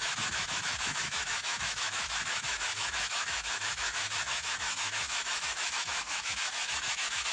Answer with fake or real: fake